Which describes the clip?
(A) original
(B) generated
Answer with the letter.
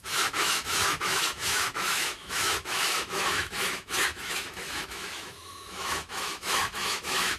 B